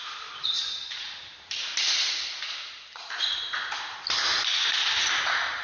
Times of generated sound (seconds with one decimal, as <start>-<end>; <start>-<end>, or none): none